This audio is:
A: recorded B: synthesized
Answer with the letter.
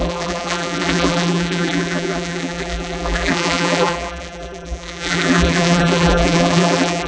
B